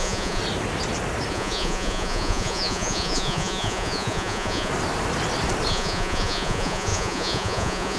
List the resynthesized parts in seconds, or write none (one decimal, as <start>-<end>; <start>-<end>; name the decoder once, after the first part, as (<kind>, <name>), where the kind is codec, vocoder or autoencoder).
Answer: 0.0-0.4 (vocoder, Vocos); 1.3-4.7; 5.7-8.0